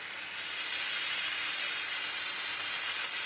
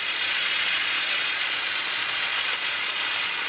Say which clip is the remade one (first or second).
second